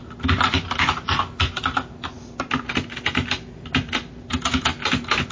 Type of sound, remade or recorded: recorded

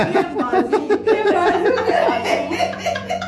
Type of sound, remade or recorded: remade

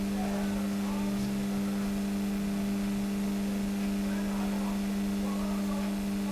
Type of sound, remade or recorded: recorded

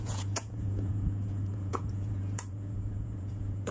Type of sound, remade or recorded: remade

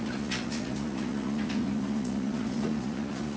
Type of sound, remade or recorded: remade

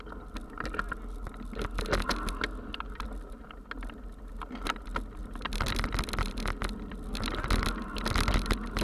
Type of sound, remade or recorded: recorded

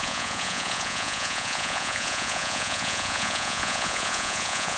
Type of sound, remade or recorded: remade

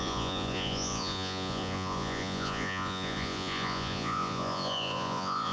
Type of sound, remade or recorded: remade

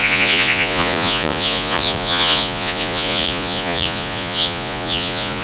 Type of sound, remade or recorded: remade